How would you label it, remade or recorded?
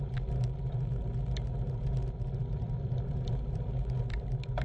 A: recorded